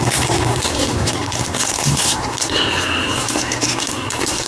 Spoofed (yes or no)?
yes